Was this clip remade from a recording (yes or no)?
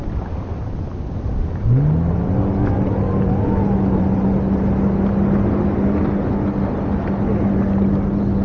no